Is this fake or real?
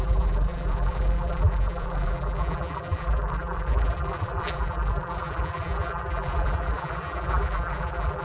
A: fake